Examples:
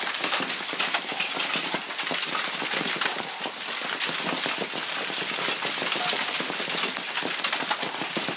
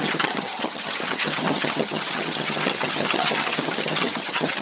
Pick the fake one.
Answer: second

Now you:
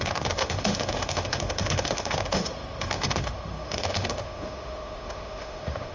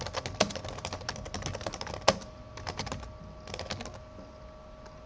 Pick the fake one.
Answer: first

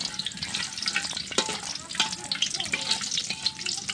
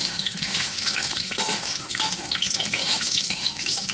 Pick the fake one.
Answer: second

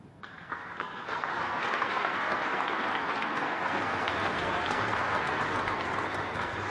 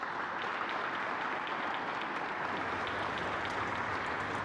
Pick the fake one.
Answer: first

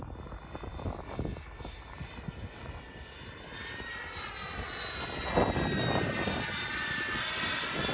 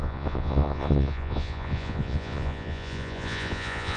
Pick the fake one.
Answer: second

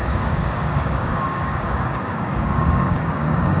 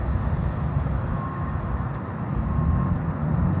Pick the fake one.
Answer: first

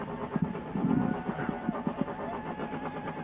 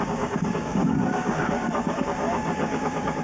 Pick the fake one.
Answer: second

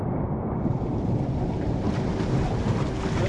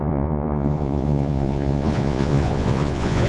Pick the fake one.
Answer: second